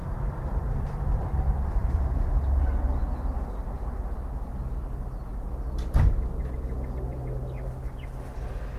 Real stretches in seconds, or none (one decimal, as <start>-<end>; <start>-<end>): 1.2-1.8; 2.6-8.8